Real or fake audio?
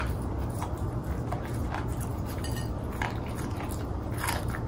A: real